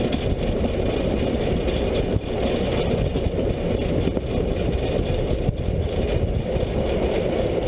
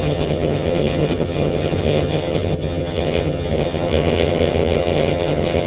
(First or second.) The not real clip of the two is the second